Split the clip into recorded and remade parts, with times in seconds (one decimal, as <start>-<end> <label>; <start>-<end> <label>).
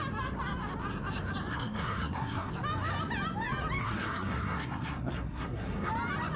0.0-1.5 recorded; 1.5-2.5 remade; 2.5-3.8 recorded; 3.8-5.9 remade; 5.9-6.4 recorded